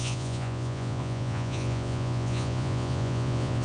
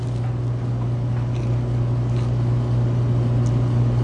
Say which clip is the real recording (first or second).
second